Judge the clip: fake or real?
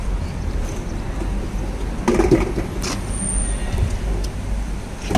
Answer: real